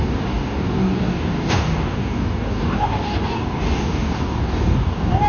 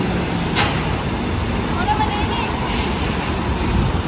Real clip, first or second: second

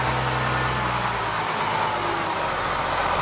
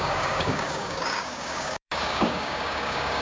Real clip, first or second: first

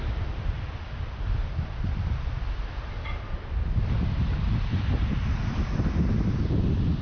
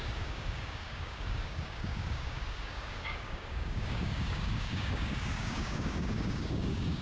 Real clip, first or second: first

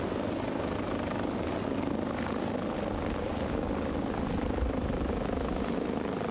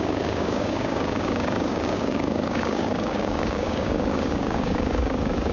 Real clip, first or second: first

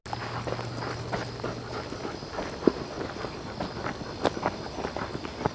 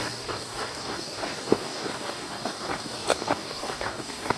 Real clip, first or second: first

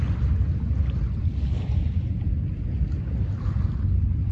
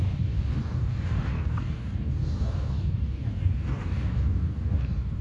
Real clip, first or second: first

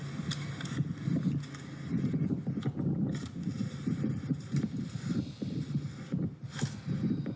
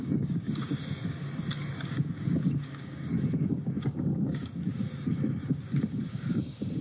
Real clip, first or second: first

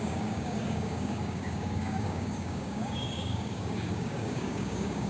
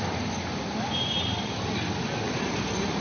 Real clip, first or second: second